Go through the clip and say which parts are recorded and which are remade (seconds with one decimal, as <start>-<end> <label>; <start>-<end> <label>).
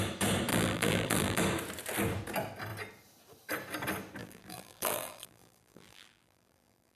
0.0-0.5 recorded; 0.5-1.4 remade; 1.4-4.2 recorded; 4.2-7.0 remade